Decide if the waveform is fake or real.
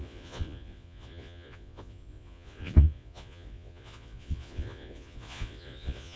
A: fake